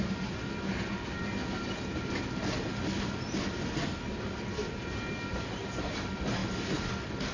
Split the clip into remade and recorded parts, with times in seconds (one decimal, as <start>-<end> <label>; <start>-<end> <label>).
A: 0.0-7.3 recorded